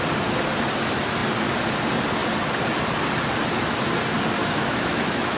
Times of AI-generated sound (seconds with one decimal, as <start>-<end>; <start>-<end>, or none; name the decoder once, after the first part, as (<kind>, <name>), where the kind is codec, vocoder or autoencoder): 4.4-5.4 (autoencoder, DAC-VAE)